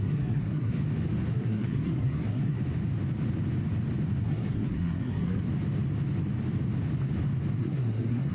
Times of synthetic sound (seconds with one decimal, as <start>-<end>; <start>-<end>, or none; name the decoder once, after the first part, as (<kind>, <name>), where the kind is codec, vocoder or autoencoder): 0.0-0.8 (codec, SNAC); 1.3-2.6; 4.2-5.4; 7.6-8.3